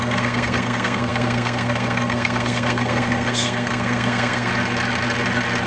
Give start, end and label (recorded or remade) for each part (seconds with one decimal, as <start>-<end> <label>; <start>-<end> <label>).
0.0-4.5 remade; 4.5-5.7 recorded